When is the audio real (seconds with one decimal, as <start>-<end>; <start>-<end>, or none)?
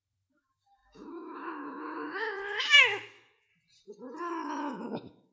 3.5-4.2